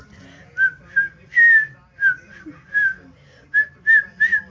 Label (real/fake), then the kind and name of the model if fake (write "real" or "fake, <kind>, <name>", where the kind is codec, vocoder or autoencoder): real